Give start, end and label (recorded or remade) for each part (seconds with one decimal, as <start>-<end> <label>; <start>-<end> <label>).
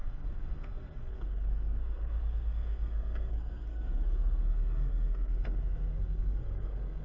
0.0-7.0 remade